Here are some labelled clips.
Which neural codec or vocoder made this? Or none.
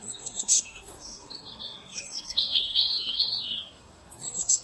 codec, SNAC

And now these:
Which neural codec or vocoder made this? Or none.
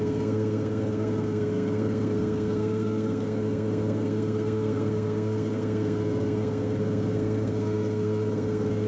codec, SNAC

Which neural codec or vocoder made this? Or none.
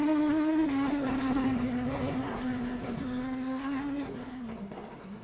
codec, SNAC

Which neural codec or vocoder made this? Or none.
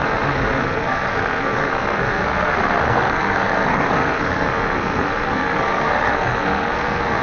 codec, SNAC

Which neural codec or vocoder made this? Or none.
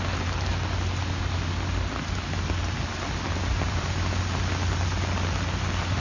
none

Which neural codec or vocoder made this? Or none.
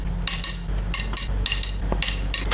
none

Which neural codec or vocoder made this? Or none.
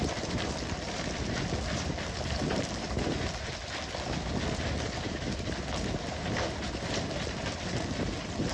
none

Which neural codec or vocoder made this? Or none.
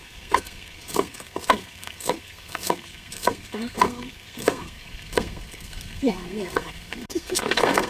codec, SNAC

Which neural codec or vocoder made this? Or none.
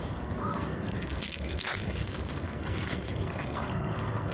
codec, SNAC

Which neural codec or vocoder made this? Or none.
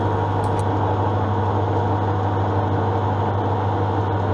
none